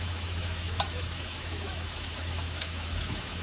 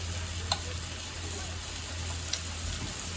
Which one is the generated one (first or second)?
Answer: first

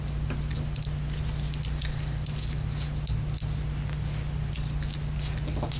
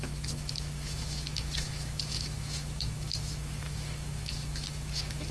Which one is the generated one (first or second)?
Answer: second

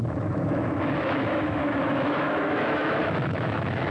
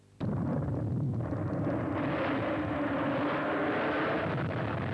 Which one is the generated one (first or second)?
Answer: first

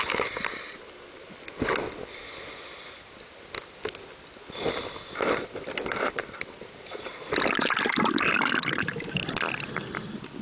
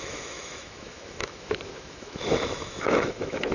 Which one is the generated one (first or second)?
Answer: second